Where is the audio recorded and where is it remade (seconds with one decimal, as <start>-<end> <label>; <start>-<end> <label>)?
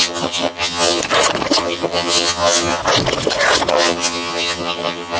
0.0-1.0 remade; 1.0-1.6 recorded; 1.6-2.8 remade; 2.8-3.7 recorded; 3.7-5.2 remade